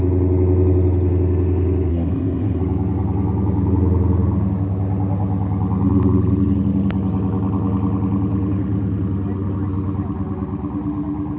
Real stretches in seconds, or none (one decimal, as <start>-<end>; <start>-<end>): 0.0-1.9; 2.6-11.4